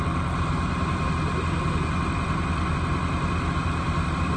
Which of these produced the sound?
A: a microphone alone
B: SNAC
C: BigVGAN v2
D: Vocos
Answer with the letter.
A